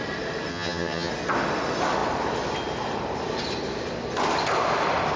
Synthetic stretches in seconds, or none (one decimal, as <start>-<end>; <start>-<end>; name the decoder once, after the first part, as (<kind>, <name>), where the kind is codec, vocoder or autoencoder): 0.5-1.1 (vocoder, HiFi-GAN)